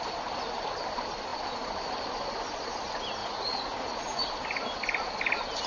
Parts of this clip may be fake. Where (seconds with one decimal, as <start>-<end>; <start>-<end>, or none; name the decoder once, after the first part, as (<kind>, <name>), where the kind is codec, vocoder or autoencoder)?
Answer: 3.2-4.2 (vocoder, Vocos)